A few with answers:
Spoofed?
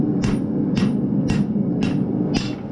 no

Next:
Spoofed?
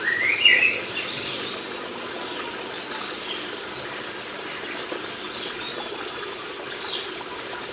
no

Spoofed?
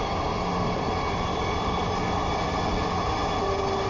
no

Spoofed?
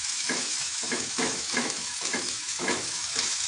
yes